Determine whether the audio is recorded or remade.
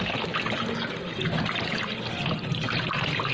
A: recorded